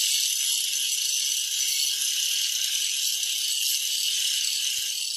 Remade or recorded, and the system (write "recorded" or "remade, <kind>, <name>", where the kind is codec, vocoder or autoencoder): recorded